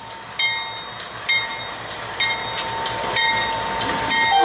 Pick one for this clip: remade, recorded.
recorded